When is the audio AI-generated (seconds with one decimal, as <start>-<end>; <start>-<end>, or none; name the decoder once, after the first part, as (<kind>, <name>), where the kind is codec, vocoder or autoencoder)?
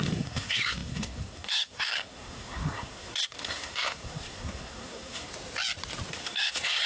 0.0-5.3 (codec, SNAC); 6.1-6.9